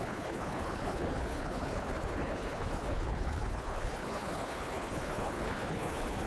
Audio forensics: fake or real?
fake